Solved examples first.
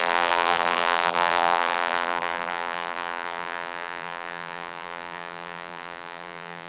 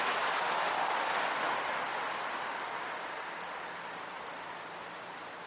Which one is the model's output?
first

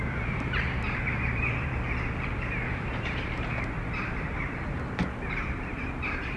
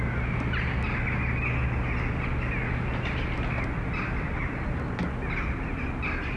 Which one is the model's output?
first